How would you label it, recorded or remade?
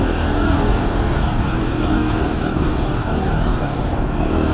remade